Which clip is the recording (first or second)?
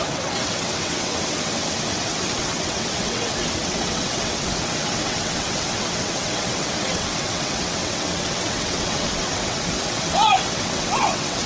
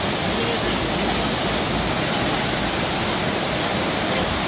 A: second